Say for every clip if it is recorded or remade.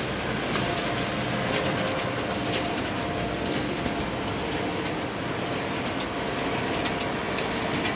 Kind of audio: recorded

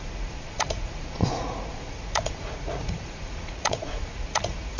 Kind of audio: remade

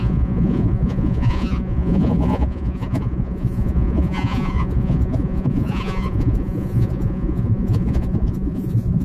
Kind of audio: remade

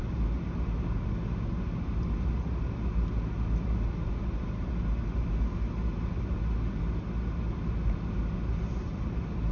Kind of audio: recorded